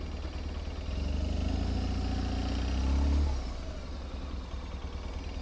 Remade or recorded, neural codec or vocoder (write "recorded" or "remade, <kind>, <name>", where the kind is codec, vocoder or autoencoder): recorded